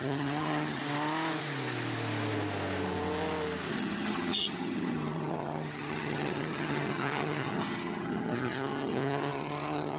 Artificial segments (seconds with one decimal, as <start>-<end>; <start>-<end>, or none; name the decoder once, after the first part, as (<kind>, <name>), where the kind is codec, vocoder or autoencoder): 0.0-0.8 (vocoder, HiFi-GAN); 3.7-10.0